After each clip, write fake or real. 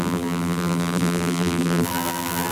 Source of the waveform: fake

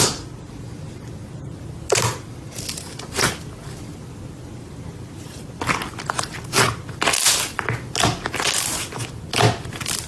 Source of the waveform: real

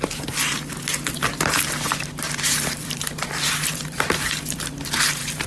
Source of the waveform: fake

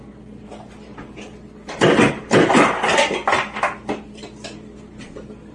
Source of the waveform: real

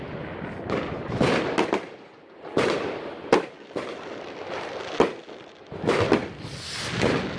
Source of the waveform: real